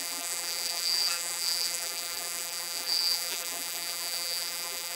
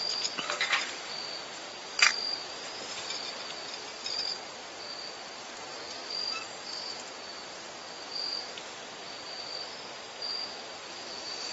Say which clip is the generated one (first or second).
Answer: first